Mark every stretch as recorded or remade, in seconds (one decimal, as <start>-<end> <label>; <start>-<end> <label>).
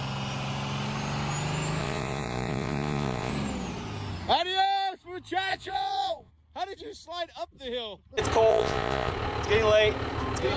0.0-1.8 recorded; 1.8-3.3 remade; 3.3-5.5 recorded; 5.5-6.3 remade; 6.3-8.5 recorded; 8.5-9.1 remade; 9.1-10.6 recorded